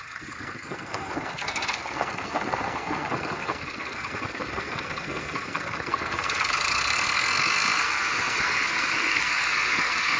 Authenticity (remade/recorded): remade